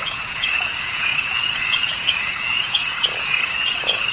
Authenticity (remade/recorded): remade